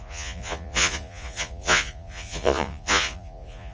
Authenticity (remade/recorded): remade